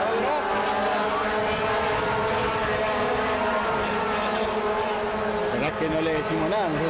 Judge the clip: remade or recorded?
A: recorded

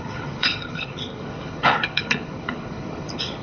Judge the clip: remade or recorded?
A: remade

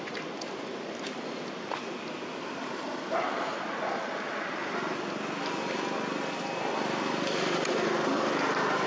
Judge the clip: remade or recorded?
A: recorded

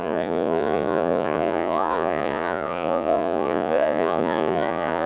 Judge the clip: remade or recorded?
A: remade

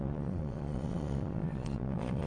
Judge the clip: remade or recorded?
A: remade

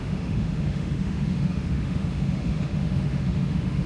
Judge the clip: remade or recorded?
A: remade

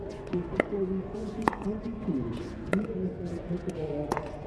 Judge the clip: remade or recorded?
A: remade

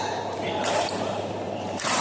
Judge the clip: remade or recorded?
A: remade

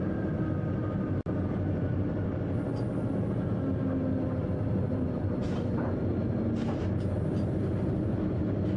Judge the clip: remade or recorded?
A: recorded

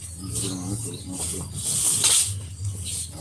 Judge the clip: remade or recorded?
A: recorded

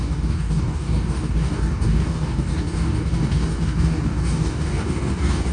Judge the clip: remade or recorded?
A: remade